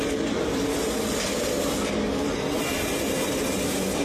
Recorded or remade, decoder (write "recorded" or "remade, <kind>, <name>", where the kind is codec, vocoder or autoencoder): remade, vocoder, BigVGAN v2